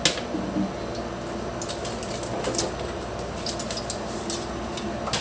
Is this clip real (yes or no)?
yes